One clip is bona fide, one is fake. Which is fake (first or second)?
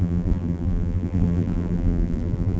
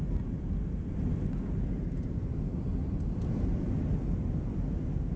first